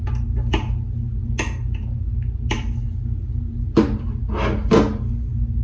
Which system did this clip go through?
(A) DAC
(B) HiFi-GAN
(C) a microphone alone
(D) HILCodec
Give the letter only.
C